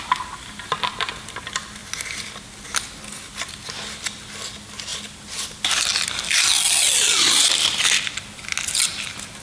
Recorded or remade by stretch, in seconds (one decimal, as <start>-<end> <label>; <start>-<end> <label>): 0.0-9.4 recorded